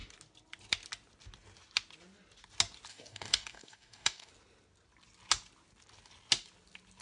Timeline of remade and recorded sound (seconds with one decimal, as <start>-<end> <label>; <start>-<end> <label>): 0.0-2.9 recorded; 2.9-4.3 remade; 4.3-7.0 recorded